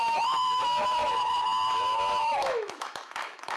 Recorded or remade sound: remade